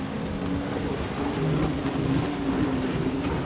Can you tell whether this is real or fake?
real